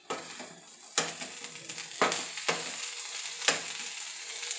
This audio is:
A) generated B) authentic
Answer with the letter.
B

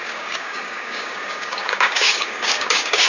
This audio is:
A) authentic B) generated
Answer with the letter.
B